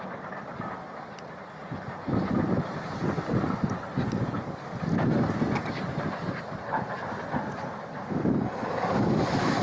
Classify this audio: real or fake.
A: real